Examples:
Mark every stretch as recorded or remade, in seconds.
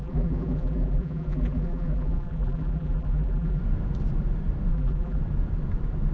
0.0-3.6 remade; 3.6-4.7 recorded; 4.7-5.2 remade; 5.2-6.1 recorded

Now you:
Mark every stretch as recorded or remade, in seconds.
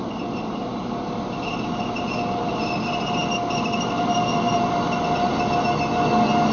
0.0-6.5 recorded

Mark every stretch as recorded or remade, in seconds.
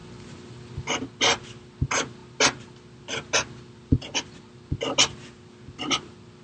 0.0-6.4 recorded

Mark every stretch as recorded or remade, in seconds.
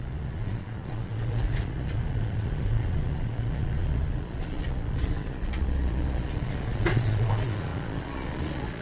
0.0-8.8 remade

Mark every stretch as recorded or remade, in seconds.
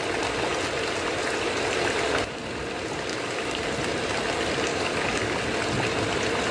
0.0-3.1 recorded; 3.1-3.7 remade; 3.7-4.7 recorded; 4.7-5.4 remade; 5.4-6.5 recorded